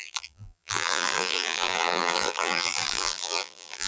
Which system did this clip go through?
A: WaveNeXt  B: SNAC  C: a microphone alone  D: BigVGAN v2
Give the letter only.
D